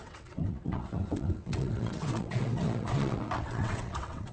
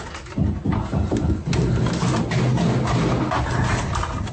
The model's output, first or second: first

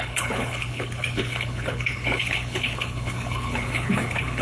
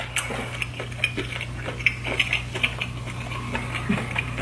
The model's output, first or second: first